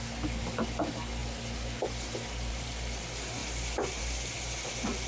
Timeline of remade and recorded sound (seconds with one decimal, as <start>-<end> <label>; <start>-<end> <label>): 0.0-5.1 recorded